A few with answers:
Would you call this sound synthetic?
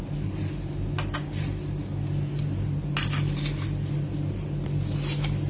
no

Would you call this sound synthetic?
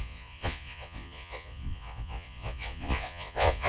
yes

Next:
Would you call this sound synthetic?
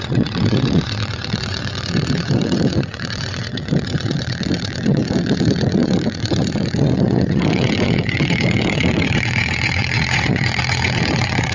yes